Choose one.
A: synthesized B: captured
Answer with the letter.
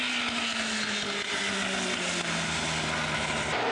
B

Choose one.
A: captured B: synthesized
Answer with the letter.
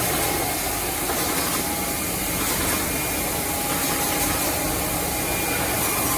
A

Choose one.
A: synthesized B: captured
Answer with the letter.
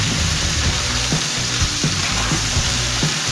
A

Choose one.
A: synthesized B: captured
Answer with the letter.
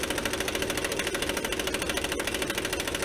B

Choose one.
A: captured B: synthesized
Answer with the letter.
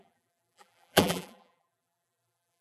B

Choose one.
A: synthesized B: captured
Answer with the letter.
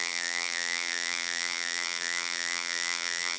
A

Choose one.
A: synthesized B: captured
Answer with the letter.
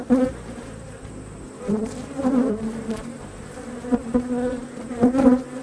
A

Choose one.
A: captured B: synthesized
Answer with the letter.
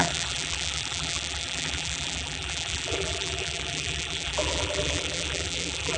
B